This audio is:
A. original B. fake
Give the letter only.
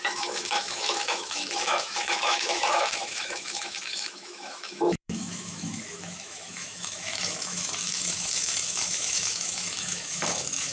B